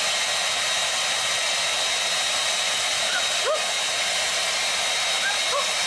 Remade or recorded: recorded